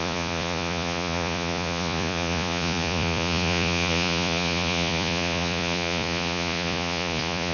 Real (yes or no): no